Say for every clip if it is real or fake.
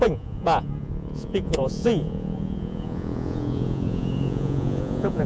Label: fake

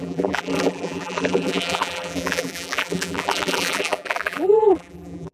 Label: fake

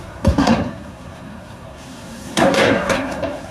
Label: fake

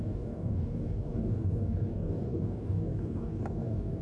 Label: fake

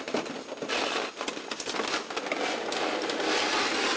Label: real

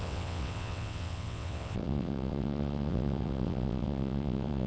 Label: fake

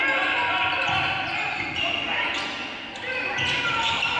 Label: real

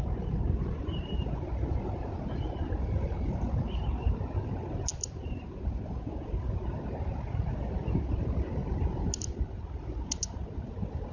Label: real